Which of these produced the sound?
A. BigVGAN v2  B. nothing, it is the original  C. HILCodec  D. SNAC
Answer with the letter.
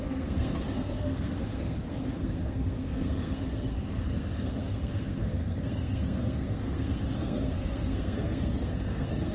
D